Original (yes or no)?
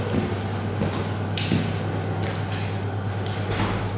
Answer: yes